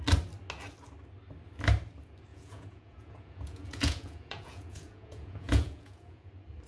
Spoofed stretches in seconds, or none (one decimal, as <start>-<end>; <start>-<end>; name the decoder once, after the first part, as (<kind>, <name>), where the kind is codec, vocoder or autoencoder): 2.3-6.3 (vocoder, Vocos)